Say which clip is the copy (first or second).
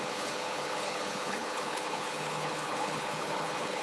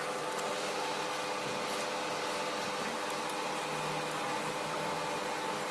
first